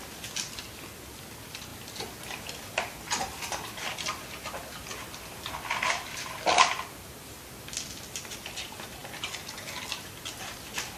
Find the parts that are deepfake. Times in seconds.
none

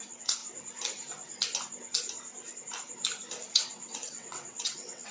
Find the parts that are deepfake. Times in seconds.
0.0-0.4; 3.5-5.1